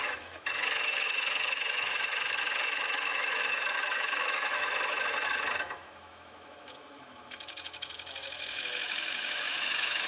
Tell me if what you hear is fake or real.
fake